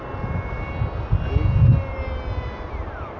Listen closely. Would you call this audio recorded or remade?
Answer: recorded